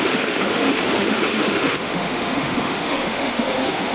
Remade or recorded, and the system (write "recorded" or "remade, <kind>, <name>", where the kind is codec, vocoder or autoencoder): remade, autoencoder, DAC-VAE